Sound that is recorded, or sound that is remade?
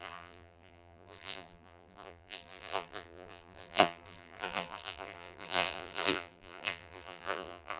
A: remade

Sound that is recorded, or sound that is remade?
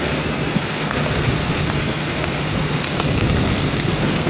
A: remade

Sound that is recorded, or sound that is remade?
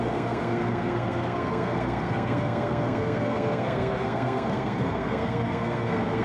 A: remade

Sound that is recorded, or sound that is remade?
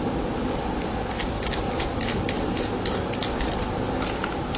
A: recorded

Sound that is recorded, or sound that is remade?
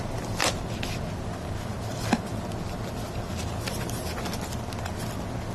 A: recorded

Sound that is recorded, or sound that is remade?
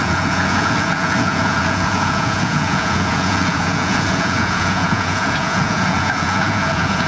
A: remade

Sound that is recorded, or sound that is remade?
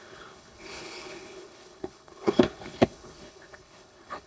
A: remade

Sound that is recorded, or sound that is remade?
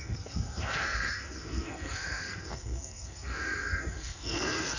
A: remade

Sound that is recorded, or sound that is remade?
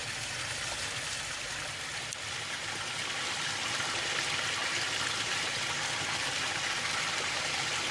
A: recorded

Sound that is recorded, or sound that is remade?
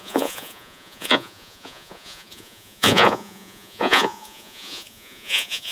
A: remade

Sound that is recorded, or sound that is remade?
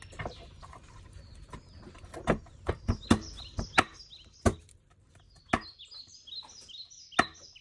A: recorded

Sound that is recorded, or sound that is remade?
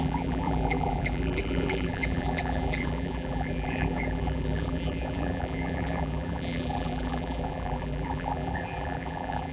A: remade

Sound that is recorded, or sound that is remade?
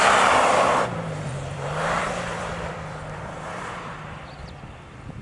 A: remade